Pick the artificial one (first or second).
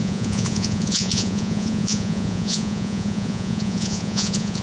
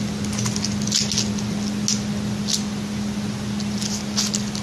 first